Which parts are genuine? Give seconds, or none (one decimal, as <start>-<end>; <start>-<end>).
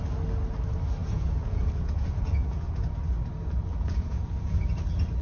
0.0-1.0; 3.0-3.7; 4.8-5.2